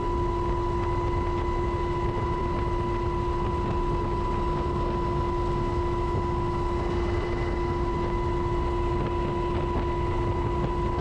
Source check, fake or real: real